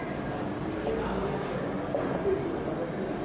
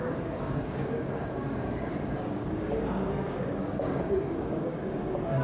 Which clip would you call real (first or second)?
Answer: first